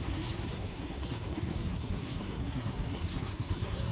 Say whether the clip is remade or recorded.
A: remade